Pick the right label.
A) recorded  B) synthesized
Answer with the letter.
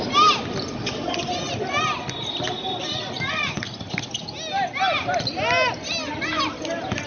A